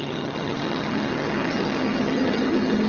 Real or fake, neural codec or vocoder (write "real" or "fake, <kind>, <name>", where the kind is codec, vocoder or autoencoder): fake, vocoder, HiFi-GAN